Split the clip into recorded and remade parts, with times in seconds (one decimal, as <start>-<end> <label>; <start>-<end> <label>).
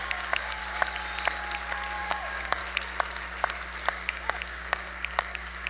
0.0-0.6 remade; 0.6-2.0 recorded; 2.0-2.6 remade; 2.6-3.9 recorded; 3.9-5.7 remade